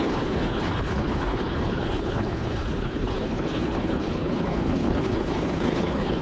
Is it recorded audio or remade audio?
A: remade